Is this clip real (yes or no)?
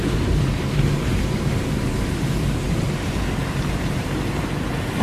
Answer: no